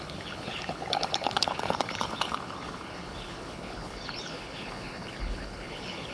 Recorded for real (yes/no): no